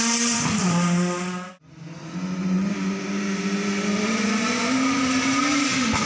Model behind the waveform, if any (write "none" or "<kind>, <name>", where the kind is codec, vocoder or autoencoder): none